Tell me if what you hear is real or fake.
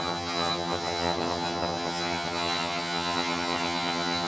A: fake